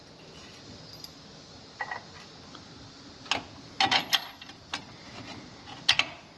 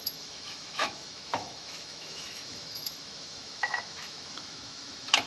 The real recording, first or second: first